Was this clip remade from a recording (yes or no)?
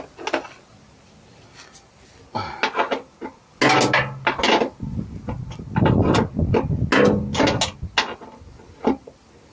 no